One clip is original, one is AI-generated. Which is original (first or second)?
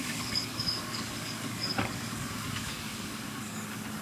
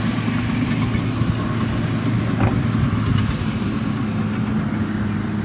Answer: second